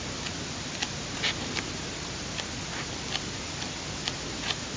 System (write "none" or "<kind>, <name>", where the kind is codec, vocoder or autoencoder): none